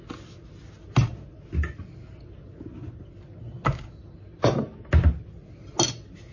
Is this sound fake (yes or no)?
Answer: no